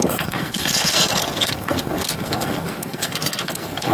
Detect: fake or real fake